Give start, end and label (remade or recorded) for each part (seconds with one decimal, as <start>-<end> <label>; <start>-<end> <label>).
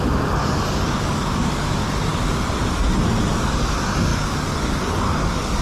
0.0-0.4 recorded; 0.4-1.7 remade; 1.7-4.1 recorded; 4.1-5.6 remade